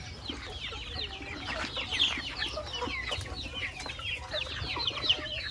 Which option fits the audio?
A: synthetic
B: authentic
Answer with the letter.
B